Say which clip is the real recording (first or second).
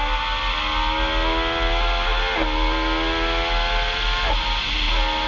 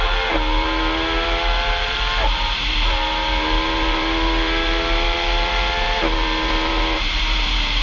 first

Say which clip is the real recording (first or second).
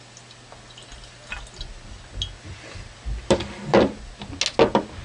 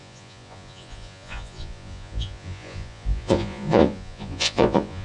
first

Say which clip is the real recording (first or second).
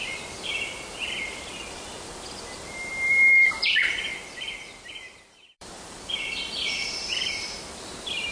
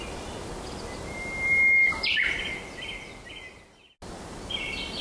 second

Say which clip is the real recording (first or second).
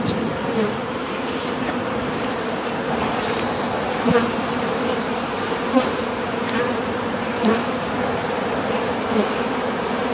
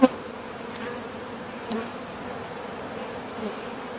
second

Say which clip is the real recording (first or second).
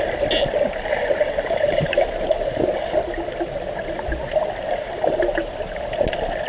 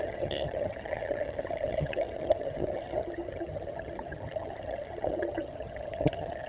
first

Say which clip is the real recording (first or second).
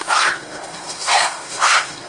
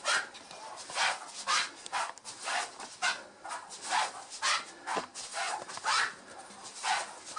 second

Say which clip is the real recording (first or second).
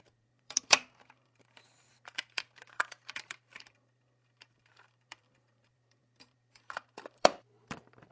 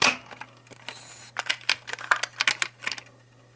second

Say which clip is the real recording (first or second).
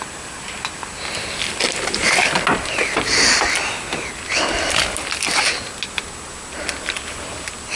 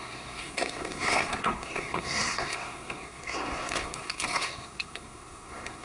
first